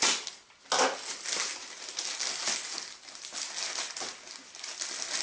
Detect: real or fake real